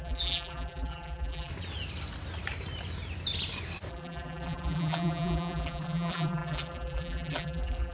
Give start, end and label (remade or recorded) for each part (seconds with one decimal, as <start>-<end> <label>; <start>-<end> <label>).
0.0-1.5 remade; 1.5-3.9 recorded; 3.9-7.9 remade